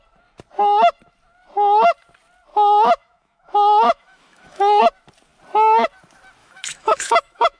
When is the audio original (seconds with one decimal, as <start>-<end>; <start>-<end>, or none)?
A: 0.0-2.5; 4.8-6.4